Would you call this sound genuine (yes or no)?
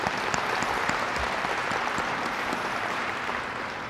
no